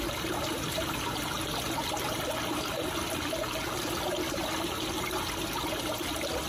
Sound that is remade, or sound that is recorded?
recorded